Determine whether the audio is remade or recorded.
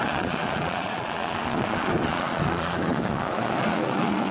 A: remade